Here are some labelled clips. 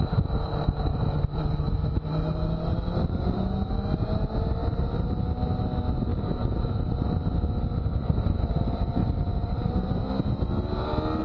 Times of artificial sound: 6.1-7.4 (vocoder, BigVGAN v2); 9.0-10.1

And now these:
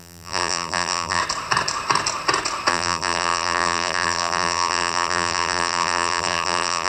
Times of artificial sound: 0.0-1.2 (vocoder, BigVGAN v2); 2.7-6.9

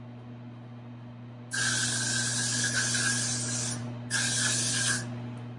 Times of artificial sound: none

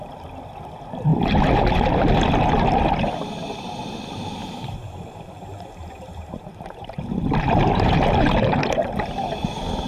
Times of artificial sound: 4.4-8.6 (vocoder, BigVGAN v2)

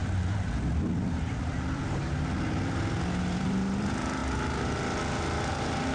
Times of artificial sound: 0.0-1.8 (vocoder, BigVGAN v2); 3.4-4.2; 5.5-5.9